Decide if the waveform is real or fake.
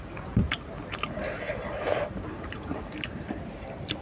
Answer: real